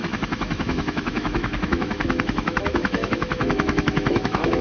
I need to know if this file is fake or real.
fake